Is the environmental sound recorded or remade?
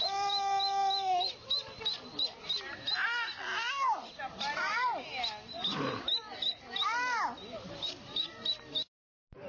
remade